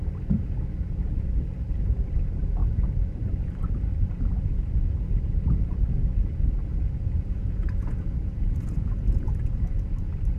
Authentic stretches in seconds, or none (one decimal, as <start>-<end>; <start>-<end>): 0.0-6.7; 9.9-10.4